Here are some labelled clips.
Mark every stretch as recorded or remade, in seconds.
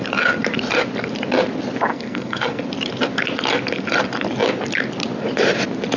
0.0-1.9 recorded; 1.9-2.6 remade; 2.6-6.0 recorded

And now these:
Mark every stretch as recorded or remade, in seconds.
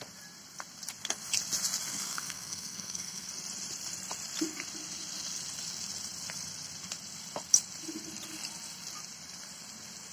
0.0-1.9 recorded; 1.9-3.3 remade; 3.3-10.1 recorded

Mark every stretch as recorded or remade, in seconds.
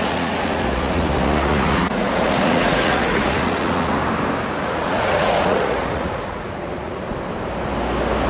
0.0-4.0 remade; 4.0-4.6 recorded; 4.6-7.0 remade; 7.0-8.3 recorded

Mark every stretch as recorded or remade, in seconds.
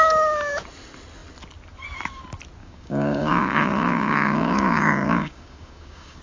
0.0-2.6 recorded; 2.6-6.2 remade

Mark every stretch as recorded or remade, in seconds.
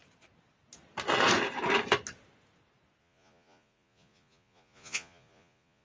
0.0-3.0 recorded; 3.0-5.8 remade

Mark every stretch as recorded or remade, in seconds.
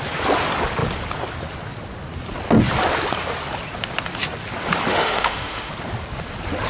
0.0-4.9 recorded; 4.9-5.7 remade; 5.7-6.7 recorded